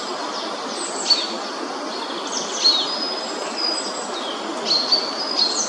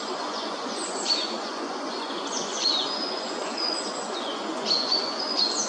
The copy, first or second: second